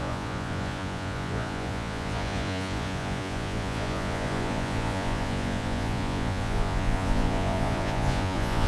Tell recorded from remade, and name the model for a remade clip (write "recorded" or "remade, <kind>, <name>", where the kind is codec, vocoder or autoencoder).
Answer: remade, vocoder, Vocos